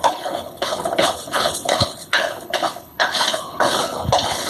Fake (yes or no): yes